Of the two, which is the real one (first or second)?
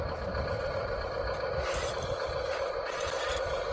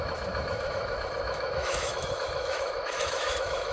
first